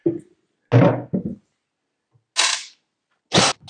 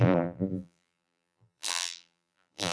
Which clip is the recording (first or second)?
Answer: first